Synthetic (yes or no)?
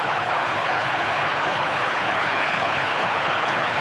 yes